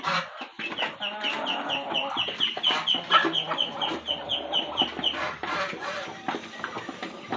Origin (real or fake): real